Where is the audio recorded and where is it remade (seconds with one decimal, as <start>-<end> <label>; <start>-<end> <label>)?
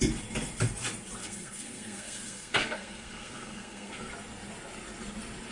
0.0-1.2 recorded; 1.2-4.1 remade; 4.1-5.5 recorded